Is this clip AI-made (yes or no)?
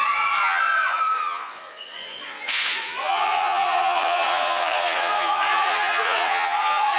yes